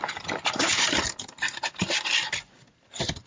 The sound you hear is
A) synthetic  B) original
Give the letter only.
B